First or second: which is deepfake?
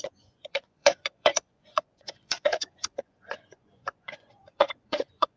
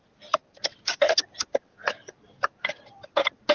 first